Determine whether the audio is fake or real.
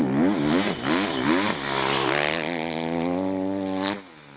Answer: real